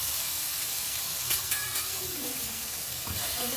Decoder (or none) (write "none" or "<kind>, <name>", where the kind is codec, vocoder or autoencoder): codec, SNAC